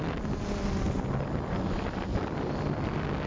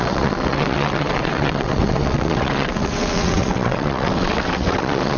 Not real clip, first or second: second